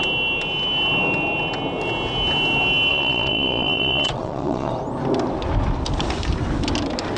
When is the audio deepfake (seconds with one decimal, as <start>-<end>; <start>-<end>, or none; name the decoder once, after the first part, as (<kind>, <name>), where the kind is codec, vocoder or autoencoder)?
2.9-4.7 (vocoder, Vocos)